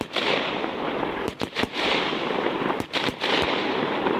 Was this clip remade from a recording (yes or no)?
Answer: yes